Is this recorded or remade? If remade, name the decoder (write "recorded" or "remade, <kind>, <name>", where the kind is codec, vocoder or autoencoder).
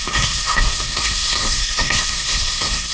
remade, codec, SNAC